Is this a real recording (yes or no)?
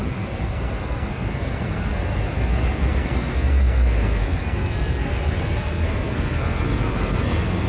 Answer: no